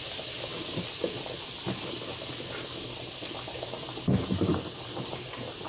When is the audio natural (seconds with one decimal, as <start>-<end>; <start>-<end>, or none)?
0.0-5.7